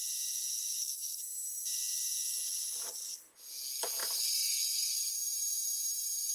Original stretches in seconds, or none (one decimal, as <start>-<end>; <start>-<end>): 0.0-4.0